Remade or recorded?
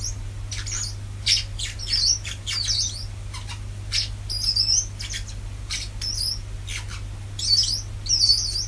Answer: recorded